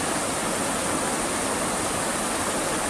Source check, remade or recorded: recorded